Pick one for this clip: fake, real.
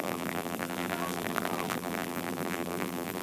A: fake